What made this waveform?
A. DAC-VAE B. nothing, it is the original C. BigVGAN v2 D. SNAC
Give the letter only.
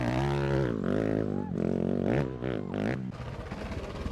B